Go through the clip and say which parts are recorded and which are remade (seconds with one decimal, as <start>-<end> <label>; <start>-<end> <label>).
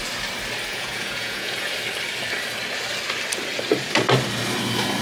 0.0-0.7 recorded; 0.7-1.7 remade; 1.7-5.0 recorded